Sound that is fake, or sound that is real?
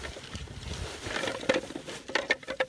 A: real